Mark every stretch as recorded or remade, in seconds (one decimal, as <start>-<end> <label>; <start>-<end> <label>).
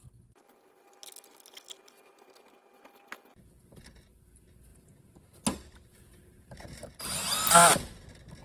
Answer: 0.0-4.7 recorded; 4.7-7.0 remade; 7.0-8.4 recorded